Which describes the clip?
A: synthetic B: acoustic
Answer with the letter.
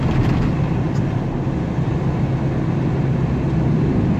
B